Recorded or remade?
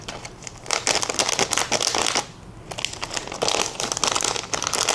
recorded